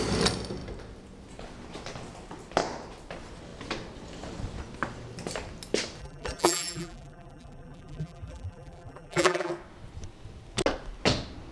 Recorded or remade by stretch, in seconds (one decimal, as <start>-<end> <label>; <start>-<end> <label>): 0.0-6.0 recorded; 6.0-9.5 remade; 9.5-11.5 recorded